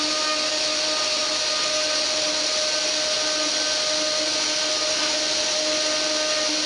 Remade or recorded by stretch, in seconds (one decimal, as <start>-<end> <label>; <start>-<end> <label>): 0.0-6.7 recorded